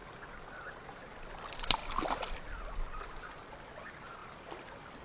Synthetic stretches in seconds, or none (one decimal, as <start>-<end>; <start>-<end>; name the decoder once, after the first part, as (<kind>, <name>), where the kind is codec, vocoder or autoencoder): 0.0-1.1 (vocoder, BigVGAN v2); 4.2-5.0